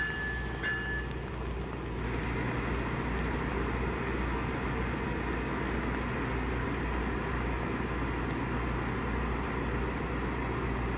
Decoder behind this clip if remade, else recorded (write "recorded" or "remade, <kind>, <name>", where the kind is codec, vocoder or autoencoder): recorded